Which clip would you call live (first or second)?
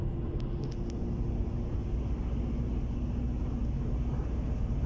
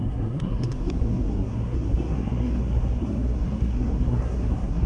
first